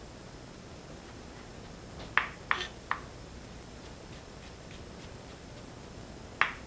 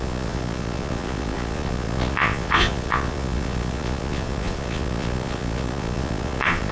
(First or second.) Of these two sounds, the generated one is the second